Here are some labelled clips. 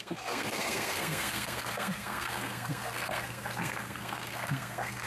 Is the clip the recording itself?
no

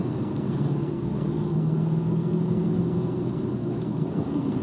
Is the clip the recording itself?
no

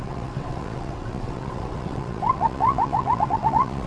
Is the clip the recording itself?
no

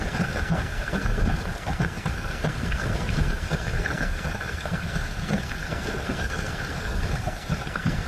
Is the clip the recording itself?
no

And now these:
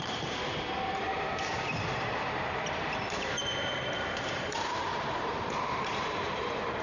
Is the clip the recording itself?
no